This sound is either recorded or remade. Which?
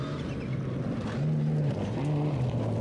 recorded